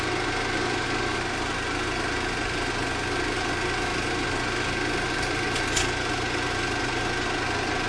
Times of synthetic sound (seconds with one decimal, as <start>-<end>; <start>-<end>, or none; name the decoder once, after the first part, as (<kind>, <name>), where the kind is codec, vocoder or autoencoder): none